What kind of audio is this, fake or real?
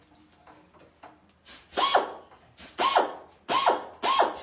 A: real